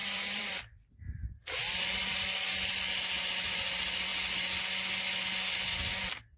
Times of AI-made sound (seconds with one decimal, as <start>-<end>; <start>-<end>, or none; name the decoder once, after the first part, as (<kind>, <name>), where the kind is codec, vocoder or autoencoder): 0.0-0.6 (vocoder, BigVGAN v2)